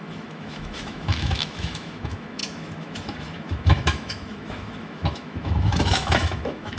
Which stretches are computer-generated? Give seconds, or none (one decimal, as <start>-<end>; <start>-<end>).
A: 0.0-6.8

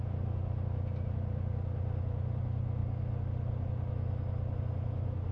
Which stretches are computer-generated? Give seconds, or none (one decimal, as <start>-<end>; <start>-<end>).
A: none

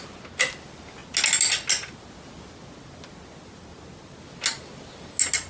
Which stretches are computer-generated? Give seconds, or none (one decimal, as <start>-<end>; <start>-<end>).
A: none

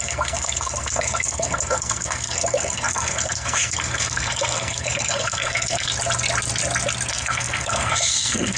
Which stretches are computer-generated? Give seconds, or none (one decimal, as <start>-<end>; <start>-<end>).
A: 0.0-5.9; 7.1-8.6

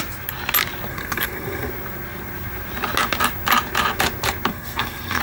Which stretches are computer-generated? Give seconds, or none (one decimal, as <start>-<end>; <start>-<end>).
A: 0.9-1.7; 4.5-5.2

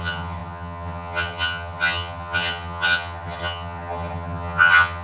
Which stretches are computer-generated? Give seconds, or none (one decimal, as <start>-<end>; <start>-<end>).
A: 0.0-5.0